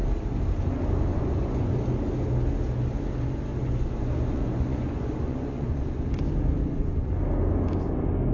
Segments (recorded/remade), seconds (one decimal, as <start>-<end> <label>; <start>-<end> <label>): 0.0-1.1 recorded; 1.1-1.8 remade; 1.8-3.5 recorded; 3.5-6.1 remade; 6.1-6.6 recorded; 6.6-7.1 remade; 7.1-8.3 recorded